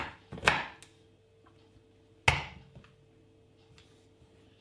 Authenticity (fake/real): real